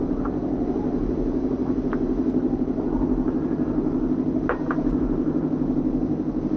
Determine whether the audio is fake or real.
real